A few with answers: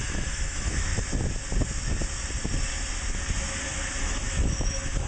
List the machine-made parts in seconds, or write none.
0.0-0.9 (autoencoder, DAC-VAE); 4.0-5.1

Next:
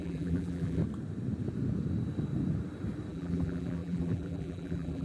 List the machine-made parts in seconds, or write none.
0.0-0.8 (vocoder, BigVGAN v2); 3.1-5.0